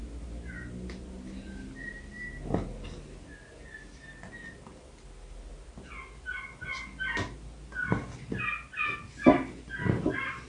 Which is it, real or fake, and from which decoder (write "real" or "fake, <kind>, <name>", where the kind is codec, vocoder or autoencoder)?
real